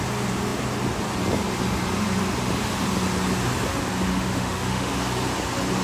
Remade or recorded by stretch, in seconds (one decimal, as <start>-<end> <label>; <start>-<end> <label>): 0.0-4.1 recorded; 4.1-4.9 remade; 4.9-5.8 recorded